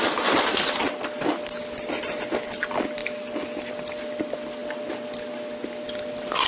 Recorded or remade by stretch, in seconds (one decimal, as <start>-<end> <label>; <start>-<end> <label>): 0.0-6.5 recorded